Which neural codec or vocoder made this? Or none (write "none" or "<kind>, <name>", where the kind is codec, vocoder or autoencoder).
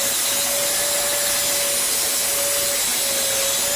none